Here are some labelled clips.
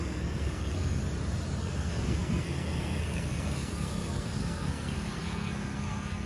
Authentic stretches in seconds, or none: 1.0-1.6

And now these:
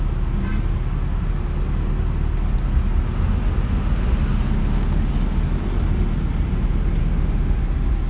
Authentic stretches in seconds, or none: 0.0-4.6; 5.1-7.0; 7.6-8.1

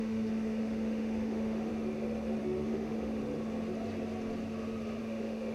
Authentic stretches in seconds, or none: 1.7-2.4; 3.2-5.0

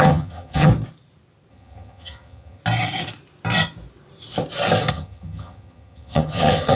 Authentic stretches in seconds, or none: 0.7-1.5; 2.6-4.9

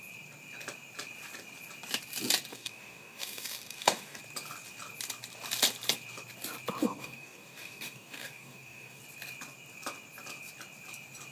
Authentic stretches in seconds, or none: 0.0-2.5; 4.2-6.8; 9.0-11.3

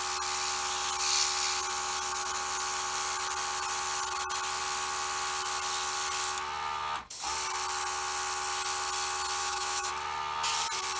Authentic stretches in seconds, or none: 0.0-9.4; 9.9-11.0